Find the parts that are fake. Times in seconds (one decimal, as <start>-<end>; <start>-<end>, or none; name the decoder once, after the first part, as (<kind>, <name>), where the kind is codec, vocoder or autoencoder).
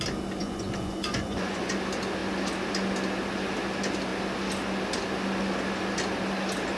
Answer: 0.4-1.7 (vocoder, Vocos)